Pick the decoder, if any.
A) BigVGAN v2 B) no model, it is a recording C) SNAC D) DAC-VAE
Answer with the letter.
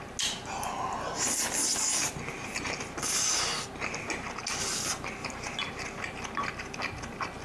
B